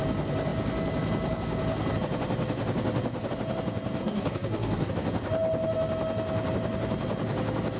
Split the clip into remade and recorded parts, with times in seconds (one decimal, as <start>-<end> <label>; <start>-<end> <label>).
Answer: 0.0-4.0 recorded; 4.0-4.9 remade; 4.9-7.8 recorded